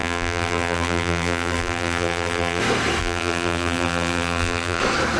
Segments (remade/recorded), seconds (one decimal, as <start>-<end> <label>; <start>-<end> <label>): 0.0-2.6 remade; 2.6-3.0 recorded; 3.0-4.8 remade; 4.8-5.2 recorded